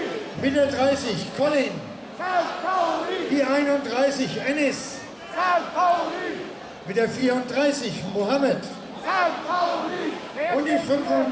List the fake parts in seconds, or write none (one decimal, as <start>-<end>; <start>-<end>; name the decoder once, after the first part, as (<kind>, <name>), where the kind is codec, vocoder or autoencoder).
1.2-2.2 (codec, DAC); 9.7-11.3